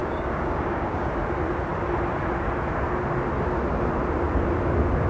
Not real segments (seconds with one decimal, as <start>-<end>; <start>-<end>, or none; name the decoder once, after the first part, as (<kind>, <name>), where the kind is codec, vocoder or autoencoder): 0.0-1.1 (codec, DAC)